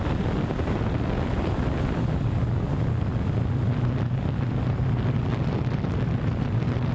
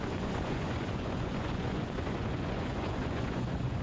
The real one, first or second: first